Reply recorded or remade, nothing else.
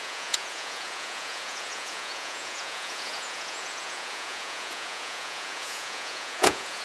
remade